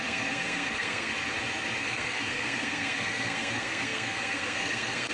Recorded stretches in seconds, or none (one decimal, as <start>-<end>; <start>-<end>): 1.1-1.8

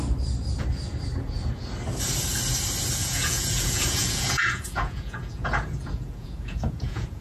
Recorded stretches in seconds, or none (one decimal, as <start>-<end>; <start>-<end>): 0.0-3.0

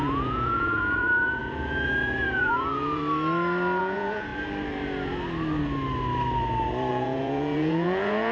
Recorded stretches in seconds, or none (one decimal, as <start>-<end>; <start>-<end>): 3.0-3.8; 4.3-6.9

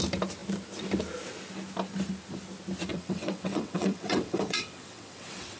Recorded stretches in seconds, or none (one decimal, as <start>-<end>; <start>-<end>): 0.0-2.9

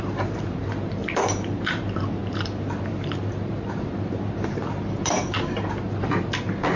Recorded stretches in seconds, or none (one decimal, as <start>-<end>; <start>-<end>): none